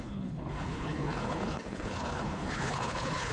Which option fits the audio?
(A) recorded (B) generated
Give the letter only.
B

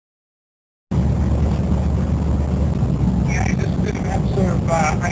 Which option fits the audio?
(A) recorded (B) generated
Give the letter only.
A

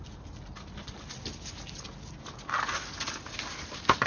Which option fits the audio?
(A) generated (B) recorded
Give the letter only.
B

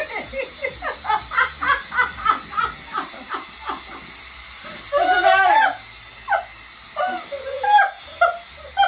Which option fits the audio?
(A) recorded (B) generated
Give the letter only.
A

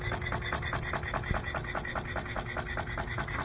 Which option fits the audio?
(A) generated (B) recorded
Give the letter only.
B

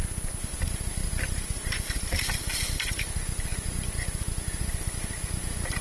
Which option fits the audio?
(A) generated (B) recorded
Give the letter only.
B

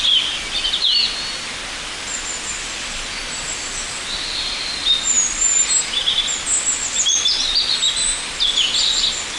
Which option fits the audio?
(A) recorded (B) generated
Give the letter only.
A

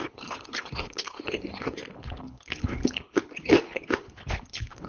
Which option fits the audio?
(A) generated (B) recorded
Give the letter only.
A